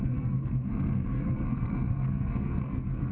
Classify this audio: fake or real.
fake